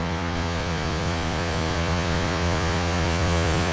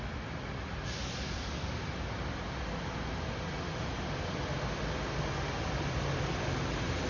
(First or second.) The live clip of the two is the second